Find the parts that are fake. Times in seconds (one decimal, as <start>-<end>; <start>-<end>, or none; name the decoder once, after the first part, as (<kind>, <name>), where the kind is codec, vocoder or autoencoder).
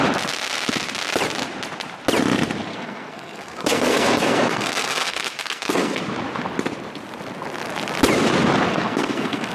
2.7-6.0 (codec, SNAC); 8.7-9.5